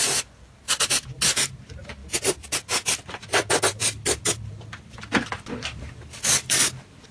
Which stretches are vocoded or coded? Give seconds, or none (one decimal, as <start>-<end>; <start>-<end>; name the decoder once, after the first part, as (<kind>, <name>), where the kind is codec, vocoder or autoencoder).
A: none